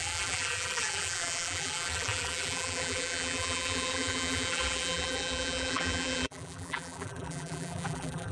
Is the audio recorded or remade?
remade